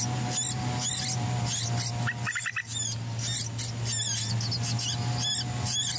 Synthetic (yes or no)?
no